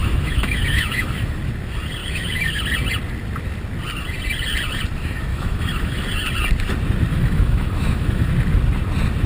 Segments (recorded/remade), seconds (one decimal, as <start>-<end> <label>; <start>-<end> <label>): 0.0-1.4 remade; 1.4-2.0 recorded; 2.0-2.6 remade; 2.6-5.3 recorded; 5.3-6.0 remade; 6.0-7.1 recorded; 7.1-8.3 remade; 8.3-9.3 recorded